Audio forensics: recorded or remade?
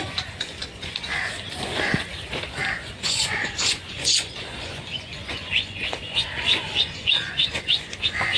remade